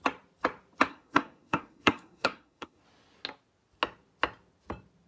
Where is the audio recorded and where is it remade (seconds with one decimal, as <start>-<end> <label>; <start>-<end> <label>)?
0.0-0.9 recorded; 0.9-2.8 remade; 2.8-5.1 recorded